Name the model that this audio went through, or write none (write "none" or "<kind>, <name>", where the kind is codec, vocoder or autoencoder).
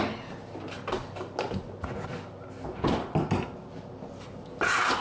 none